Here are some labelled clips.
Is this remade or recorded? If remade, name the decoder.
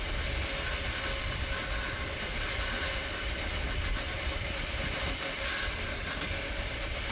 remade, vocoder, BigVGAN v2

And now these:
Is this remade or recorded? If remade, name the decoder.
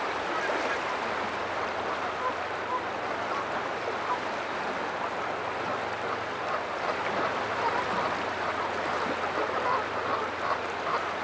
remade, vocoder, BigVGAN v2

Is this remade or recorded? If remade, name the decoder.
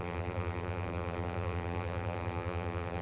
remade, vocoder, BigVGAN v2